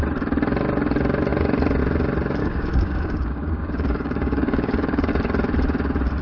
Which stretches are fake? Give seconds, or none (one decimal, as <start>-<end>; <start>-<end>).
2.4-5.1